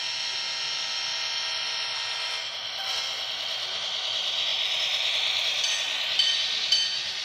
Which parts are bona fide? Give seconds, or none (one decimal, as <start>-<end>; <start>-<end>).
0.0-4.5; 6.4-7.2